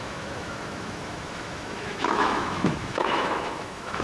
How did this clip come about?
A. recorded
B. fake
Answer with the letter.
B